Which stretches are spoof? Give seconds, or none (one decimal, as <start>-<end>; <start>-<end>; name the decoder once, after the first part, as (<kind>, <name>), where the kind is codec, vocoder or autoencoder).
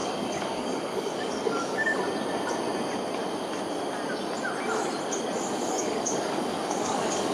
0.0-2.0 (codec, DAC); 5.8-7.3